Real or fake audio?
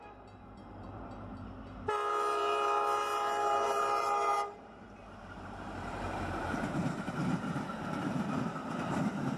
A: fake